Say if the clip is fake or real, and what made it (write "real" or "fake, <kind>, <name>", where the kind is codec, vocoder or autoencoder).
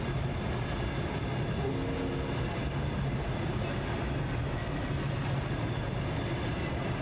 real